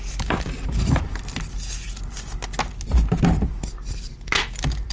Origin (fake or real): real